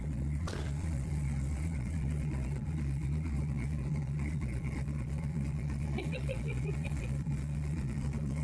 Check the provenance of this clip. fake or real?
fake